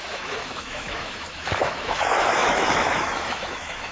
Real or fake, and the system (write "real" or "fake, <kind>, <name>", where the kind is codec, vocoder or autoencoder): fake, autoencoder, DAC-VAE